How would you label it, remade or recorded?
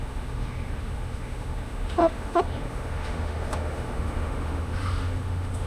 remade